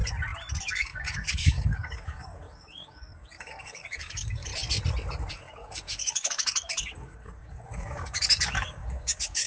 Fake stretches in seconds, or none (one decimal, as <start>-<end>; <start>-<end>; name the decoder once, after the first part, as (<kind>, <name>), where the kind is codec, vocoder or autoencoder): 0.6-4.5 (codec, DAC); 5.3-9.5